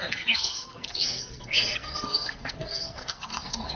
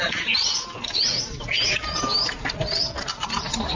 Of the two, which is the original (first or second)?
second